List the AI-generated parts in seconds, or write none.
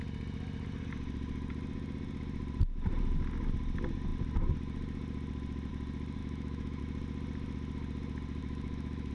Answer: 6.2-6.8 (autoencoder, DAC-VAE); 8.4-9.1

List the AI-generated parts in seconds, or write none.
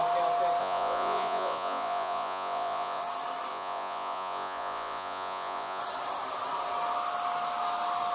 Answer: 0.6-3.0 (vocoder, Vocos); 3.5-5.8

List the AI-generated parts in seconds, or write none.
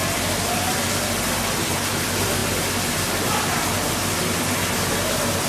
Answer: none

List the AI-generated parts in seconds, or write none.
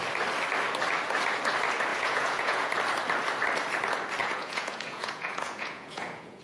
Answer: 1.9-2.7 (vocoder, Vocos); 4.2-6.4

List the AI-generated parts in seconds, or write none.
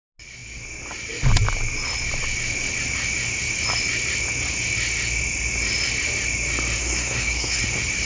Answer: 6.8-7.6 (codec, SNAC)